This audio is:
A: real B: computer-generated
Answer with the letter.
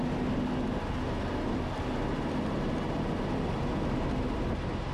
A